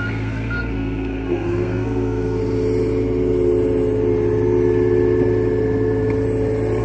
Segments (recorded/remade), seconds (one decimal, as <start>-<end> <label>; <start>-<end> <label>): 0.0-2.4 remade; 2.4-6.8 recorded